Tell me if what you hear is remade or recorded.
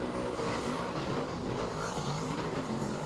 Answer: remade